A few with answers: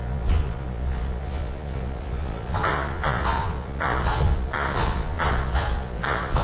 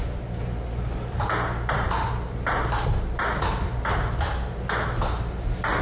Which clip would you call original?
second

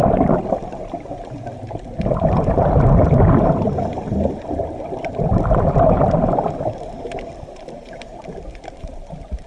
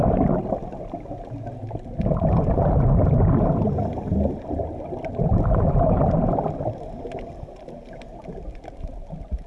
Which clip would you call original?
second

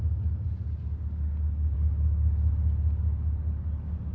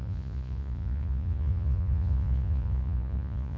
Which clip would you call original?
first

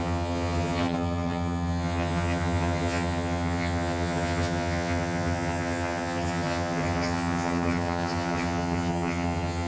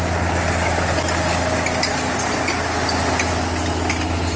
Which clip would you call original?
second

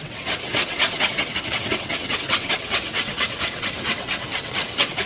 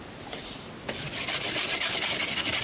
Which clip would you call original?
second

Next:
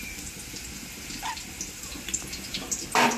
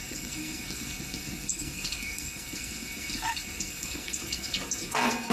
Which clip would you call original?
first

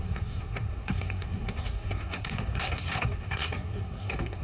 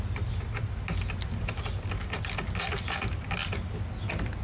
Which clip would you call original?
second